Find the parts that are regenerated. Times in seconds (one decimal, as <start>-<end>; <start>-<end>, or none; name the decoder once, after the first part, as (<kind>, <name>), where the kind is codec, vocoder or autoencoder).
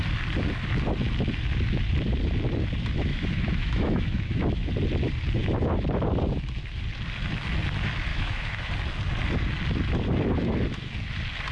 3.1-4.7 (autoencoder, DAC-VAE); 8.1-8.7